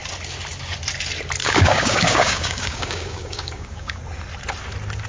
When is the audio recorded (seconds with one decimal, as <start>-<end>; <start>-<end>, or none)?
0.0-1.4; 4.0-5.1